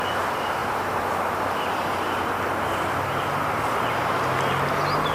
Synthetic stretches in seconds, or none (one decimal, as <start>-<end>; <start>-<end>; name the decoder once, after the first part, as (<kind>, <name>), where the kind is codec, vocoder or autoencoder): 0.6-1.6 (vocoder, BigVGAN v2)